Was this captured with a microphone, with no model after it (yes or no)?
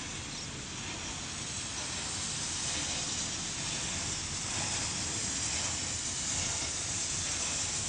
yes